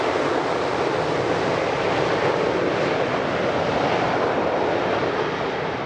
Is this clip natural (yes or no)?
yes